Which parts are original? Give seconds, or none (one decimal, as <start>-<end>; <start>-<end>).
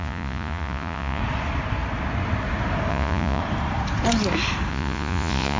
1.2-2.9; 3.4-4.7